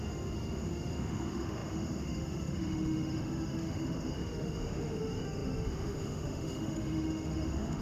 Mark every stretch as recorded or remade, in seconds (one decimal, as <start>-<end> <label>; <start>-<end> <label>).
0.0-7.8 remade